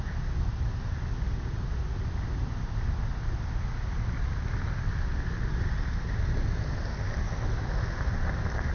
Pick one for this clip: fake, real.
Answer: real